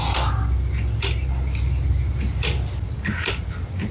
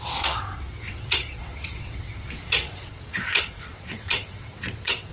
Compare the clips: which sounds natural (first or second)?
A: first